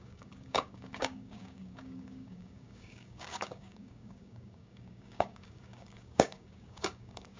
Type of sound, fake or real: fake